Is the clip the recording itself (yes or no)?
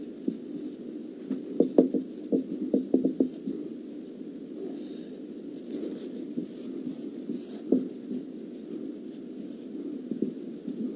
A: yes